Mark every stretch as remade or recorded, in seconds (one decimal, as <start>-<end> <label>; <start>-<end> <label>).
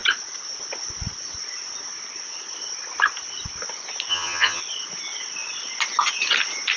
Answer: 0.0-4.1 recorded; 4.1-4.6 remade; 4.6-6.8 recorded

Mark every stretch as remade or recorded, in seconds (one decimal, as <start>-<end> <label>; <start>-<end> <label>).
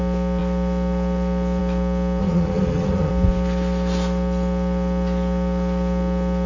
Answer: 0.0-2.2 recorded; 2.2-3.1 remade; 3.1-6.5 recorded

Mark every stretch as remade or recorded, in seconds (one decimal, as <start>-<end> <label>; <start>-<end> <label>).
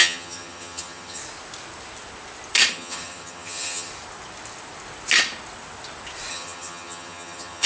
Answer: 0.0-1.2 remade; 1.2-2.7 recorded; 2.7-3.9 remade; 3.9-6.3 recorded; 6.3-7.7 remade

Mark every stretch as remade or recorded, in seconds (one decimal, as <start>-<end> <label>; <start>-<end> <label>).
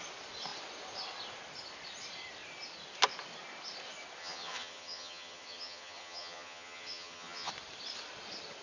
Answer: 0.0-4.2 recorded; 4.2-7.5 remade; 7.5-8.6 recorded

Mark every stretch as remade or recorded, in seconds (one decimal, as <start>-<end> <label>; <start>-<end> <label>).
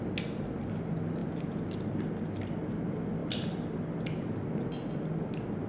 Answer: 0.0-5.7 recorded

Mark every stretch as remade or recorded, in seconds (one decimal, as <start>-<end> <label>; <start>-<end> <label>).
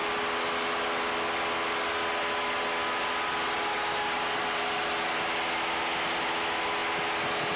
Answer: 0.0-7.6 recorded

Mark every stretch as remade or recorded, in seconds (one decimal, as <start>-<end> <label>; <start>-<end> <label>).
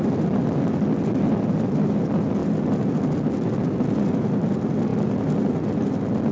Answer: 0.0-6.3 recorded